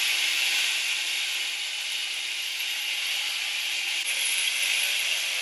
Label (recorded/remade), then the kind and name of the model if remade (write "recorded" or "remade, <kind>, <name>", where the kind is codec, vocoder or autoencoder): recorded